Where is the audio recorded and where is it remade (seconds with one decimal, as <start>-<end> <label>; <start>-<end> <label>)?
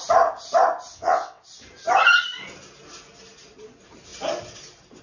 0.0-0.9 recorded; 0.9-1.4 remade; 1.4-5.0 recorded